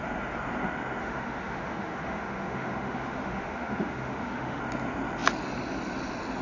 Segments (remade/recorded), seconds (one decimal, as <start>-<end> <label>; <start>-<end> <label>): 0.0-1.0 recorded; 1.0-4.6 remade; 4.6-6.4 recorded